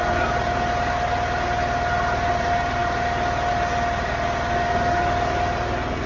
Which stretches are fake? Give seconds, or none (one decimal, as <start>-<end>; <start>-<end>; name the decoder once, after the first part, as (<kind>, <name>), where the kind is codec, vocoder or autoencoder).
none